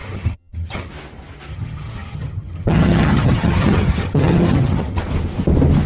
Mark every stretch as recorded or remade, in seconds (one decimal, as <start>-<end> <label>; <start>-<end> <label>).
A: 0.0-0.9 remade; 0.9-1.5 recorded; 1.5-5.0 remade; 5.0-5.9 recorded